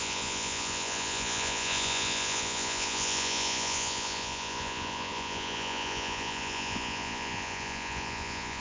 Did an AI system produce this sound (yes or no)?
yes